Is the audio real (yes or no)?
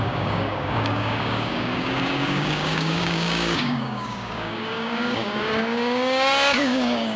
no